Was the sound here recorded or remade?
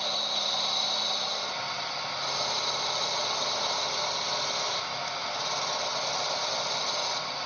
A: recorded